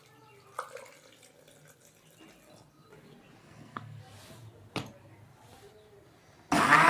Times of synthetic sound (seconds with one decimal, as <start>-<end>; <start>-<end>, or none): 3.4-4.0